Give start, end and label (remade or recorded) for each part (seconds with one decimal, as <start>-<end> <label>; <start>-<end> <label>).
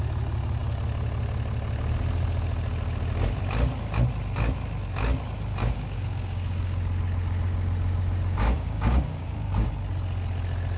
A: 0.0-5.5 recorded; 5.5-9.7 remade; 9.7-10.8 recorded